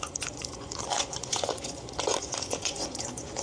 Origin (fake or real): fake